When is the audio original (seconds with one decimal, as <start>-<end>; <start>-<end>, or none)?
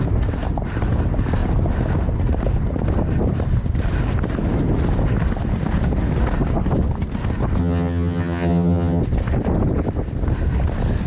0.0-7.6; 9.0-11.1